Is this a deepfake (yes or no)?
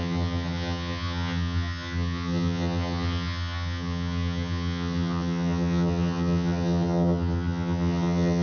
yes